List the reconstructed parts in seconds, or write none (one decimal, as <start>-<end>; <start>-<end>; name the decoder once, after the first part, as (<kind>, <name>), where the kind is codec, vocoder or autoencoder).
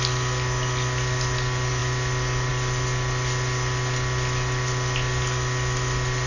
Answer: none